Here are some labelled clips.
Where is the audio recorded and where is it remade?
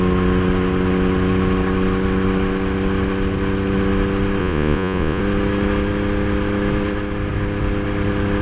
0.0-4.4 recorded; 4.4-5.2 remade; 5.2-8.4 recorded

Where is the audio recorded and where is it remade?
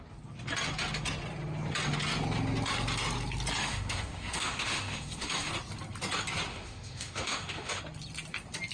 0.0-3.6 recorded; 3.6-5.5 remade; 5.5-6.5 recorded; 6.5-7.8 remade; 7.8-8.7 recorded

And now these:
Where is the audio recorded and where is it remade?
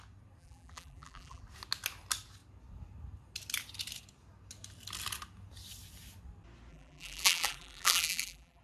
0.0-0.4 recorded; 0.4-1.4 remade; 1.4-6.7 recorded; 6.7-8.6 remade